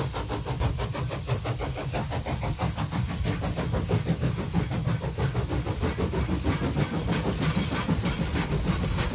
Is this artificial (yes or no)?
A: no